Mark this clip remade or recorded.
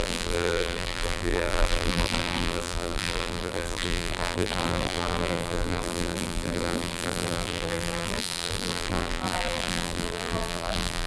remade